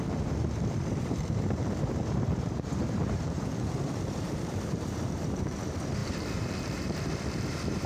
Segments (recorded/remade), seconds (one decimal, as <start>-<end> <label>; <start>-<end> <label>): 0.0-7.9 remade